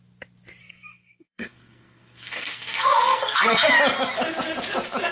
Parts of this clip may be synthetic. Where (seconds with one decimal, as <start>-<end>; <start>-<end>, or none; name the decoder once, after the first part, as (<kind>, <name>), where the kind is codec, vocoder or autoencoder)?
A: 0.6-3.7 (codec, SNAC)